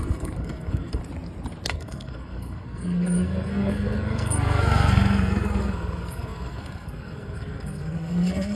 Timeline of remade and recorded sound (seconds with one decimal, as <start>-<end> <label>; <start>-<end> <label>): 0.0-1.0 remade; 1.0-1.7 recorded; 1.7-8.6 remade